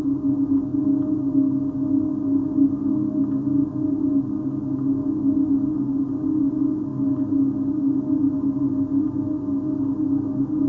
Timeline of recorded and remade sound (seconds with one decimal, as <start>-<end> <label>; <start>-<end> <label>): 0.0-10.7 recorded